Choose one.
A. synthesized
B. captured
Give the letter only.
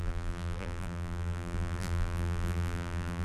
A